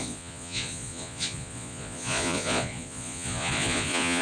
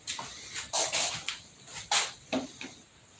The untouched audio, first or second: second